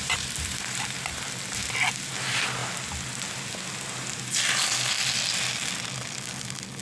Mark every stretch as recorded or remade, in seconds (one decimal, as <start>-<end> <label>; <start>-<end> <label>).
0.0-1.1 remade; 1.1-6.8 recorded